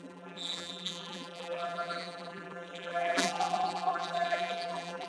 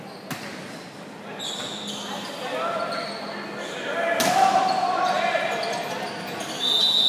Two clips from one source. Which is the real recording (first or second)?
second